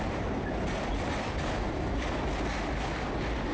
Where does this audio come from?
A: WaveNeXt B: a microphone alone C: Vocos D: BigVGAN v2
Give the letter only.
B